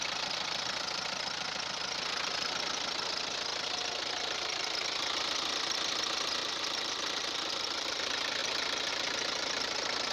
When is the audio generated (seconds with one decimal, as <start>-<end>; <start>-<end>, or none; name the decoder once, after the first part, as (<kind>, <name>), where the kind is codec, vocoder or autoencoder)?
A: 6.4-8.0 (vocoder, BigVGAN v2)